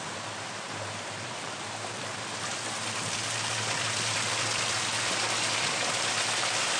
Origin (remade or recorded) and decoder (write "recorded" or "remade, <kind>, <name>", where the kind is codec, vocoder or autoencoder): recorded